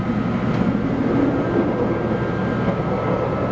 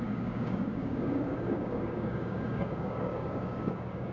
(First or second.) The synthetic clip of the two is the second